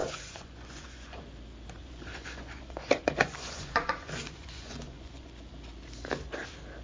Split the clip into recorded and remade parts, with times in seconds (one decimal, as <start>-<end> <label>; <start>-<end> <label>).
0.0-1.2 remade; 1.2-1.8 recorded; 1.8-5.3 remade; 5.3-6.8 recorded